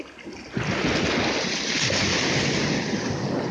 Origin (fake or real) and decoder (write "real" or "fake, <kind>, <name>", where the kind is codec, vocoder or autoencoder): real